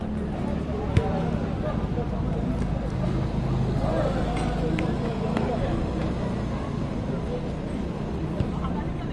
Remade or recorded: recorded